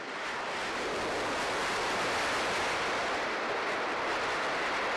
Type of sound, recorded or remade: recorded